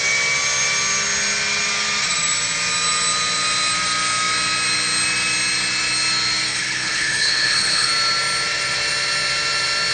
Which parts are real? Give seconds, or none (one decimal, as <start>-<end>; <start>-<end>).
0.0-6.5; 7.9-9.9